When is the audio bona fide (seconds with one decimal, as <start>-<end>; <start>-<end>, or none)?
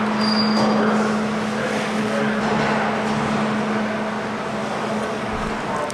0.0-1.6; 2.4-4.6; 5.5-5.9